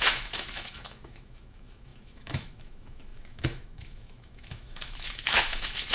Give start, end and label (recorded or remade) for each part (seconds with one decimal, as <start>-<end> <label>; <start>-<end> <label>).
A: 0.0-5.9 remade